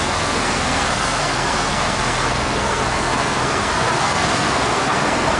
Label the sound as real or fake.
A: fake